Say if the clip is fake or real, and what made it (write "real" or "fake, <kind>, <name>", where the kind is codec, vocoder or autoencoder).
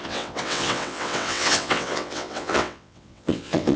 fake, vocoder, WaveNeXt